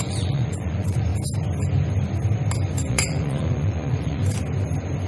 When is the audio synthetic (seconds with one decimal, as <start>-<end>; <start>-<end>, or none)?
0.0-1.1; 2.9-4.2